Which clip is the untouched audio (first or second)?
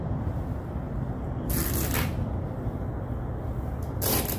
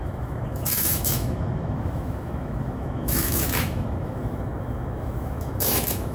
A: first